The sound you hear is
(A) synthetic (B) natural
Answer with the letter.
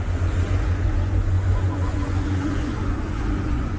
A